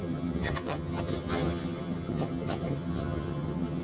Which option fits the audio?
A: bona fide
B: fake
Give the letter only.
B